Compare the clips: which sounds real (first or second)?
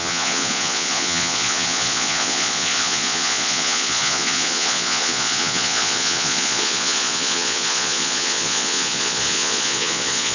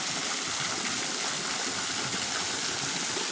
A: second